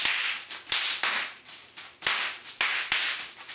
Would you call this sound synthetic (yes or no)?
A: no